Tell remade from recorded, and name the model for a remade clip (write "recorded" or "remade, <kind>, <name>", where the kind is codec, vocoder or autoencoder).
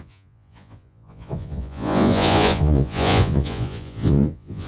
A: remade, vocoder, Vocos